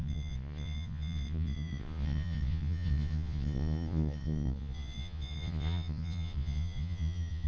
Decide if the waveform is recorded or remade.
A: remade